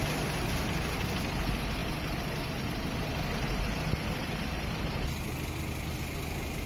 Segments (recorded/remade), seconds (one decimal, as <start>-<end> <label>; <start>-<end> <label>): 0.0-6.7 recorded